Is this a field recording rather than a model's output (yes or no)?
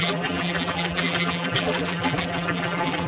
no